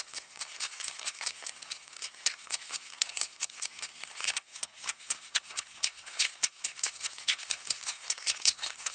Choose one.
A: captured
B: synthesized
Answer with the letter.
B